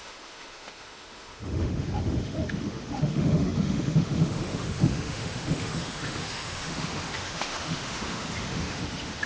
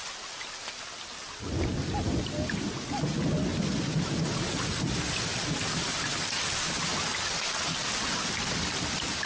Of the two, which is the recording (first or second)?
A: second